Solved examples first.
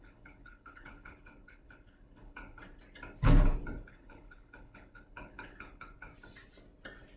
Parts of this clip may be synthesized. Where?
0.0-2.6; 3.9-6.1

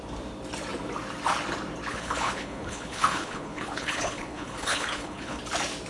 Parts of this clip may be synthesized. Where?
1.9-5.4

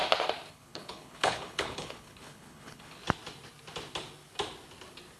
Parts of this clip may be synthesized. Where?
0.5-3.0

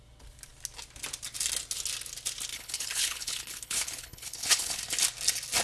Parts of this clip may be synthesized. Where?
2.5-4.8

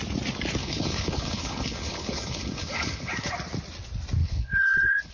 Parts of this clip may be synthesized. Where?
0.6-3.3; 4.2-5.1

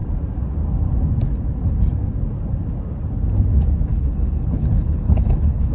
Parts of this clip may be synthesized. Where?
3.9-5.7